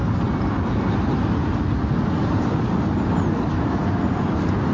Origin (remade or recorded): recorded